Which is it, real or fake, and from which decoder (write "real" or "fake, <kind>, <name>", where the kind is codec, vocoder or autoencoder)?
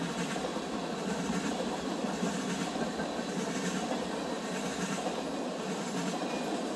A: real